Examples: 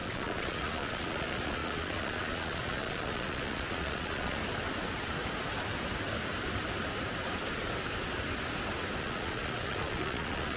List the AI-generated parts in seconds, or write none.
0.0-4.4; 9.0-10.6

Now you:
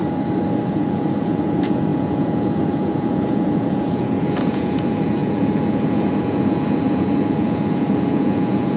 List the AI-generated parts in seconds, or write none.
0.7-8.8

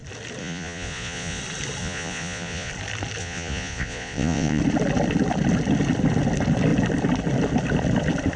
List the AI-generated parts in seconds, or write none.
0.4-1.4; 1.8-2.7; 3.2-4.6

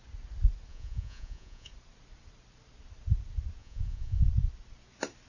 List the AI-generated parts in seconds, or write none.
0.7-1.7; 3.6-4.3

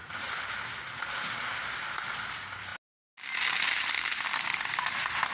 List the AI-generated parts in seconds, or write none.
none

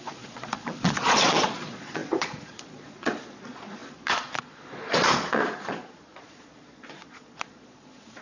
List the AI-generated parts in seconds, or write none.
0.0-8.2

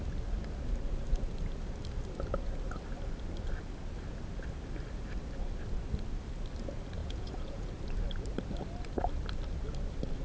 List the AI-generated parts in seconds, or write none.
7.0-7.7